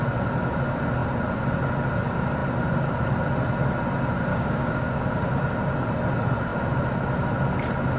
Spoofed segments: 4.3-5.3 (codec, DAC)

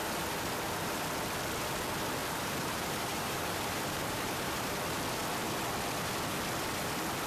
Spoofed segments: 2.2-4.8 (vocoder, BigVGAN v2)

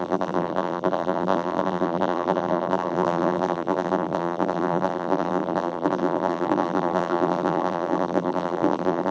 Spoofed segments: 0.0-9.1 (vocoder, BigVGAN v2)

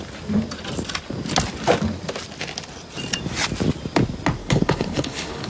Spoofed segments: 4.4-5.5 (codec, HILCodec)

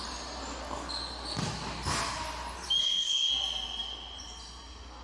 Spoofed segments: 2.8-3.3 (codec, SNAC)

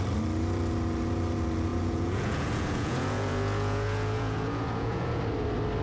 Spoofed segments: 1.7-5.2 (vocoder, Vocos)